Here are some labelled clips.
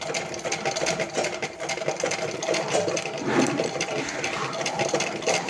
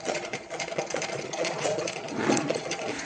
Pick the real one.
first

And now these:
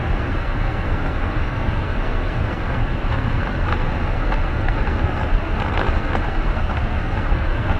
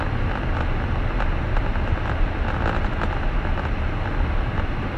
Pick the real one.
second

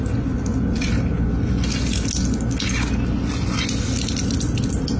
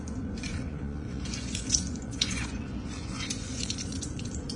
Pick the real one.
first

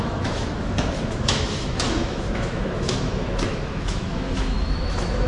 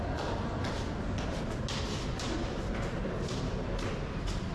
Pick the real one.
second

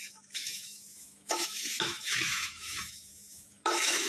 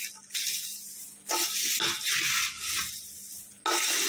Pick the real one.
second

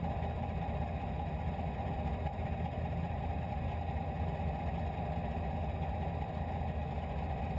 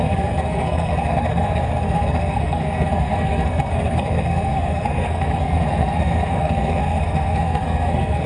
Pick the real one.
first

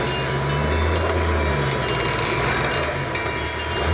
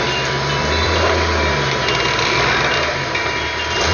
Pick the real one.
first